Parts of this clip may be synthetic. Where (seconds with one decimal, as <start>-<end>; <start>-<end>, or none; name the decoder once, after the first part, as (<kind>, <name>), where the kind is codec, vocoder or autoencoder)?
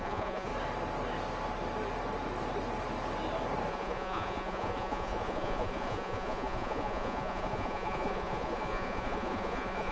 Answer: 0.0-0.5 (vocoder, Vocos); 3.7-9.9